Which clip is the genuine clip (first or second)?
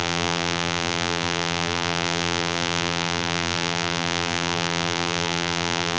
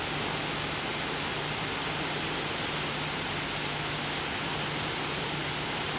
second